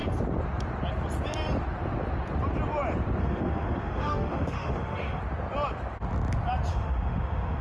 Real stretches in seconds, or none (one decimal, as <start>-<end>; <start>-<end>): 0.0-3.2; 5.2-6.7